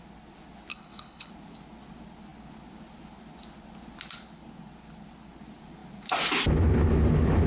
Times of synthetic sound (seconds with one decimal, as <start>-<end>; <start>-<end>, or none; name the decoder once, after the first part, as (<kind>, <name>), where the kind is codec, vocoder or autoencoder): 0.7-1.3 (codec, HILCodec)